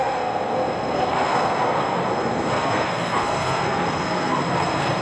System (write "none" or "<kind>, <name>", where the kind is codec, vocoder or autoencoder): codec, SNAC